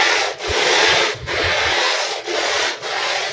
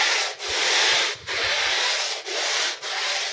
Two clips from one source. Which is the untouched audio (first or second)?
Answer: second